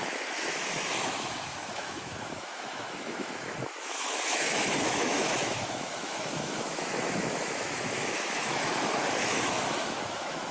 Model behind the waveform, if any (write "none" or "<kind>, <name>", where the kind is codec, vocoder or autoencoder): autoencoder, DAC-VAE